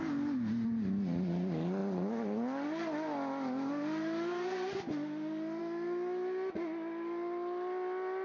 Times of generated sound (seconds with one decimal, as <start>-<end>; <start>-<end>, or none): none